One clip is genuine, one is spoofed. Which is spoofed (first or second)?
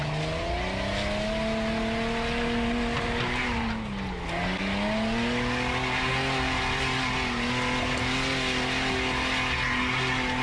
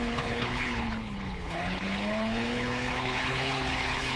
second